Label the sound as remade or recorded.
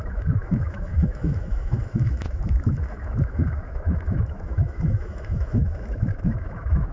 remade